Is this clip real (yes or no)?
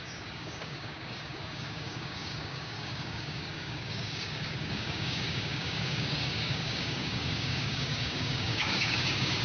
no